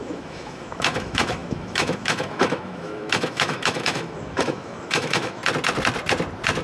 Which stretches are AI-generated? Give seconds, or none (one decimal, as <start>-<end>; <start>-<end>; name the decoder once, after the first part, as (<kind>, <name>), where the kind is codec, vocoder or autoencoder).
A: 0.0-5.4 (autoencoder, DAC-VAE)